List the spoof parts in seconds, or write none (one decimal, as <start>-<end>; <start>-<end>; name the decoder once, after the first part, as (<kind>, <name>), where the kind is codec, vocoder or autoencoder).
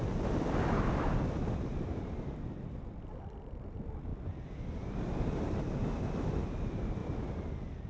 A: 4.1-5.1 (vocoder, BigVGAN v2)